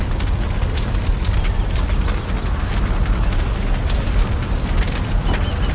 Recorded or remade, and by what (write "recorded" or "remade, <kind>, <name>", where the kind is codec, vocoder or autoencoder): recorded